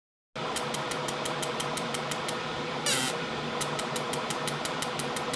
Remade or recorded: recorded